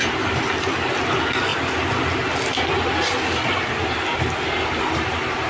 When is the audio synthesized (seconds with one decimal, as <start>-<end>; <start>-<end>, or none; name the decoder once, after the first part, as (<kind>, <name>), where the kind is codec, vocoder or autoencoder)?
none